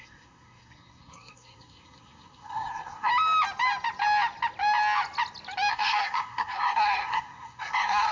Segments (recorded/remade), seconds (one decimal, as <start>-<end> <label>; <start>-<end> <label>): 0.0-3.1 remade; 3.1-5.7 recorded; 5.7-8.1 remade